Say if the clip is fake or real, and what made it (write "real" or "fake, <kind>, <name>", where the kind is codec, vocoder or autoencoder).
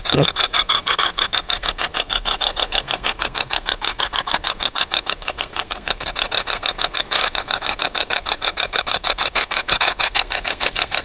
fake, codec, SNAC